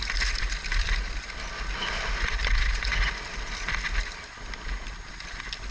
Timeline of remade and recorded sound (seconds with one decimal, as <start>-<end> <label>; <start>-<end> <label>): 0.0-2.9 remade; 2.9-5.3 recorded; 5.3-5.7 remade